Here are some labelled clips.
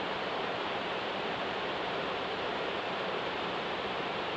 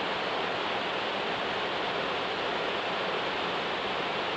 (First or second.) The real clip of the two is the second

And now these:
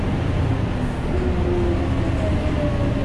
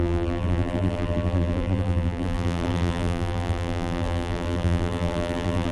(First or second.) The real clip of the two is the first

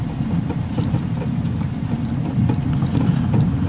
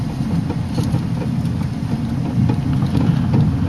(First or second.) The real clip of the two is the second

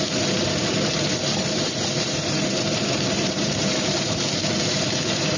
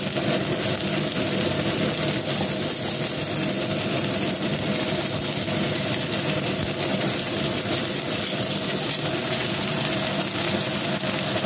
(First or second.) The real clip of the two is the second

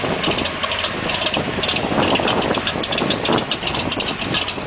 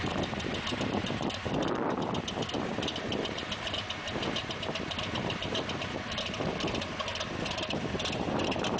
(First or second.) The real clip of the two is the first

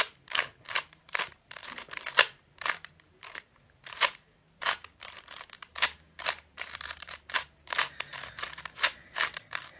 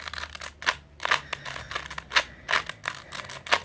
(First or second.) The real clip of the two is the second